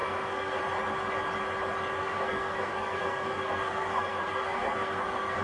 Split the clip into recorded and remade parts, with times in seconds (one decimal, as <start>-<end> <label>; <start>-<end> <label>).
0.0-0.6 remade; 0.6-2.0 recorded; 2.0-5.4 remade

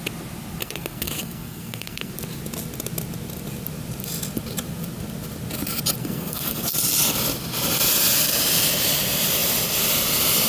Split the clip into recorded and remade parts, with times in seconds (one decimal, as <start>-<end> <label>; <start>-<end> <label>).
0.0-0.6 recorded; 0.6-2.1 remade; 2.1-6.0 recorded; 6.0-6.7 remade; 6.7-10.5 recorded

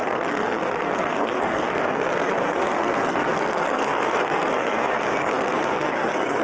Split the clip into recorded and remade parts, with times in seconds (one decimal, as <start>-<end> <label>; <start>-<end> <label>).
0.0-6.4 remade

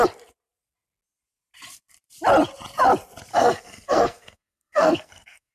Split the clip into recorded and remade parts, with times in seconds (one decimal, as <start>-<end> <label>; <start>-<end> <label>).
0.0-3.3 recorded; 3.3-5.5 remade